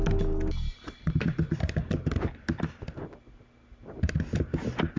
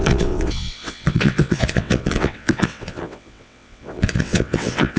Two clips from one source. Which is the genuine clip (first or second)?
first